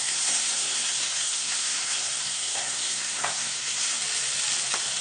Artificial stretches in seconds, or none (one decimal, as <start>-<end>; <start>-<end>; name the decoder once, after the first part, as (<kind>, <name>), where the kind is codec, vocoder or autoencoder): 0.0-4.0 (codec, SNAC)